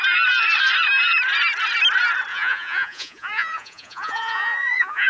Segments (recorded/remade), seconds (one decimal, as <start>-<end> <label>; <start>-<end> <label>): 0.0-2.3 recorded; 2.3-5.1 remade